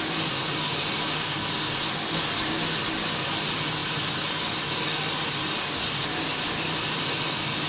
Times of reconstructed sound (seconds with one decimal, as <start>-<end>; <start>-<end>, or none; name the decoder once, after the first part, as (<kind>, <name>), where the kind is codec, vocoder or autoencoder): none

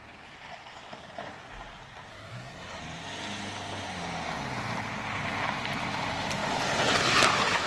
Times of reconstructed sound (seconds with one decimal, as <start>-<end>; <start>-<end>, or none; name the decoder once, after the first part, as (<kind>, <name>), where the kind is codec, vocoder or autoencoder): 2.1-2.8 (codec, SNAC)